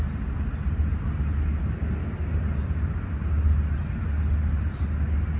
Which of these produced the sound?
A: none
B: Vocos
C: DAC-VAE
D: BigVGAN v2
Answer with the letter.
A